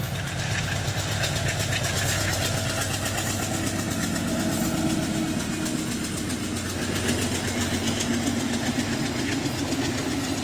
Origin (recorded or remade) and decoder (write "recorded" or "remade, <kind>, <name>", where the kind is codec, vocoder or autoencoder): recorded